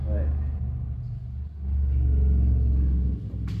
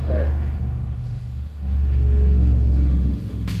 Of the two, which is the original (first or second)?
first